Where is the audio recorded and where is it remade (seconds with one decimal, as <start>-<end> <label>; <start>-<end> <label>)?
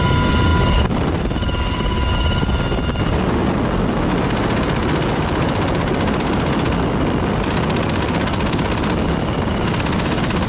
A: 0.0-10.5 recorded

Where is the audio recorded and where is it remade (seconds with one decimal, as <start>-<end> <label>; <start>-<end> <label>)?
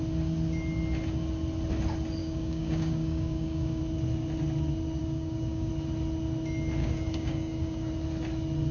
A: 0.0-2.2 recorded; 2.2-3.8 remade; 3.8-5.0 recorded; 5.0-5.7 remade; 5.7-6.8 recorded; 6.8-7.9 remade; 7.9-8.7 recorded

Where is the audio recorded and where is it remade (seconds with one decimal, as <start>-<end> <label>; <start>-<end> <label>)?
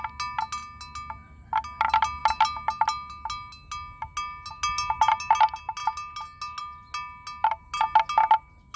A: 0.0-8.8 recorded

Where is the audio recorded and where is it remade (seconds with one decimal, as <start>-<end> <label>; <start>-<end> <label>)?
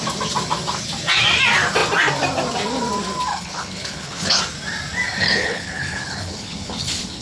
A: 0.0-3.3 recorded; 3.3-4.4 remade; 4.4-5.2 recorded; 5.2-7.2 remade